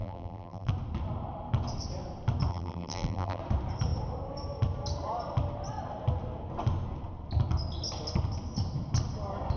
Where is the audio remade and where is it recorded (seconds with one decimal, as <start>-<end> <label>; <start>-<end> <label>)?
0.0-0.7 remade; 0.7-2.5 recorded; 2.5-3.4 remade; 3.4-9.6 recorded